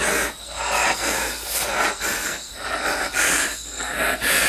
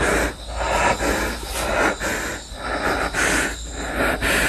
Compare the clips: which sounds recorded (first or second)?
second